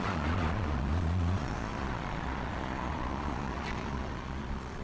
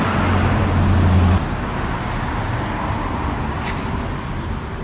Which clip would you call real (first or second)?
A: second